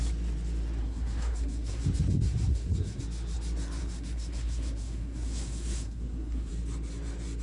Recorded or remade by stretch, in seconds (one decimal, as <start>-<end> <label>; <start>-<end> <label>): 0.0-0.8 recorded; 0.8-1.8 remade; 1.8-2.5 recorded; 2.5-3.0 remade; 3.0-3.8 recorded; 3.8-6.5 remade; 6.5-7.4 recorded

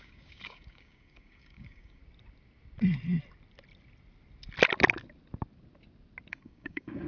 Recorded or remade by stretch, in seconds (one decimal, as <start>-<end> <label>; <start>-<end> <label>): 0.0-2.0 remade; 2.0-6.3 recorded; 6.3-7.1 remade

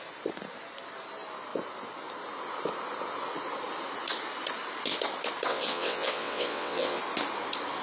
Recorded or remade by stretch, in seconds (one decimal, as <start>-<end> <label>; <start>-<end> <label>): 0.0-5.5 recorded; 5.5-7.0 remade; 7.0-7.8 recorded

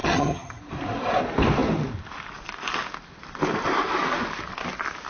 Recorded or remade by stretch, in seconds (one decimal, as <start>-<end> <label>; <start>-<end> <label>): 0.0-0.6 remade; 0.6-5.1 recorded

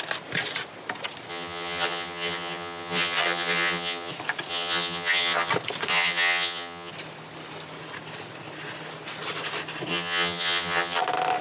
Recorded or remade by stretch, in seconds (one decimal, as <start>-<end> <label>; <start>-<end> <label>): 0.0-1.3 recorded; 1.3-4.1 remade; 4.1-4.5 recorded; 4.5-5.5 remade; 5.5-5.9 recorded; 5.9-6.9 remade; 6.9-9.9 recorded; 9.9-11.0 remade; 11.0-11.4 recorded

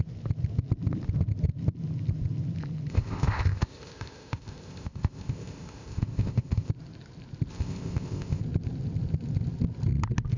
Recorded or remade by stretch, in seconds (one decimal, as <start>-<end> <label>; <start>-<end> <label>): 0.0-2.9 recorded; 2.9-6.7 remade; 6.7-7.5 recorded; 7.5-8.4 remade; 8.4-10.4 recorded